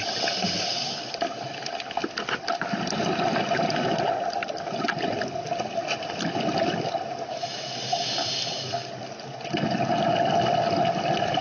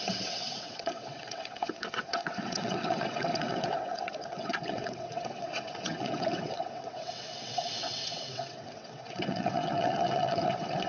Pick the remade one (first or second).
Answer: second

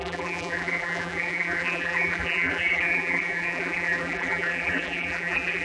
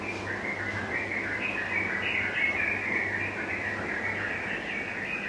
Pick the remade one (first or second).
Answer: first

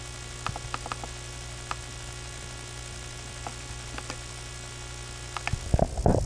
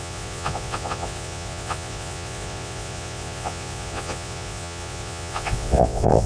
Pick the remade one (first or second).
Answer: second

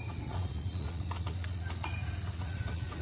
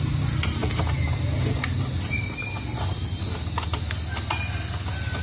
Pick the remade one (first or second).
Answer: first